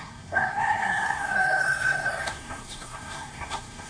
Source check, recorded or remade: remade